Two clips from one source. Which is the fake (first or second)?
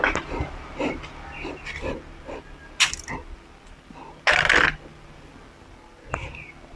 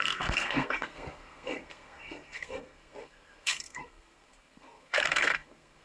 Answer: second